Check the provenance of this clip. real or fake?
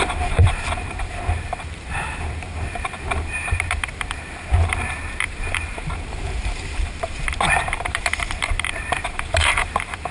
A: fake